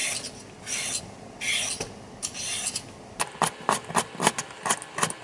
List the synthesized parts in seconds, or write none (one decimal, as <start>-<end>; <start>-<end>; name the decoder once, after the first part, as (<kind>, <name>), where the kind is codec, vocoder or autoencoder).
none